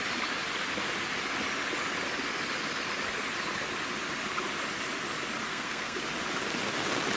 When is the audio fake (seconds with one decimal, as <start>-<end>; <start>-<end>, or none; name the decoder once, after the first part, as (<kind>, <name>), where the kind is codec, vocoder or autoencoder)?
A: 5.5-6.0 (codec, SNAC)